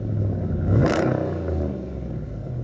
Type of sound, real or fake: fake